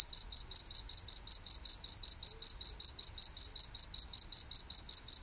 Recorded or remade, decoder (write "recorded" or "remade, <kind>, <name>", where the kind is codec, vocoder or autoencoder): recorded